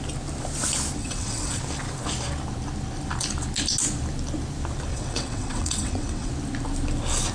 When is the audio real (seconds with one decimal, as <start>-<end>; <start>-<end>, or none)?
0.0-1.0; 1.6-4.9; 6.3-7.3

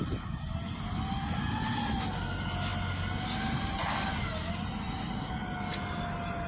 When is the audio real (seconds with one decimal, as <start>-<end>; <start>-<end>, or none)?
0.0-6.5

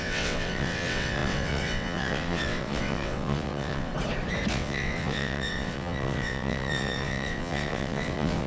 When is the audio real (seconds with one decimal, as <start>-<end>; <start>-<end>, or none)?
3.9-4.5

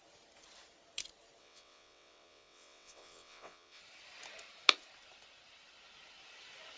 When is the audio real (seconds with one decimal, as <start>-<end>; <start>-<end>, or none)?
0.0-1.4; 3.8-6.8